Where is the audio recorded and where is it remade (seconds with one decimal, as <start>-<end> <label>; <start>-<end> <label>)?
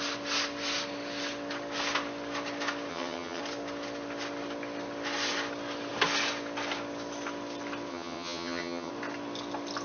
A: 0.0-2.9 recorded; 2.9-3.4 remade; 3.4-7.9 recorded; 7.9-8.9 remade; 8.9-9.8 recorded